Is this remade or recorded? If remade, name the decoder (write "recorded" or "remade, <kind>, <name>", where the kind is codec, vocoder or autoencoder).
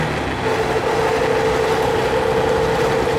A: recorded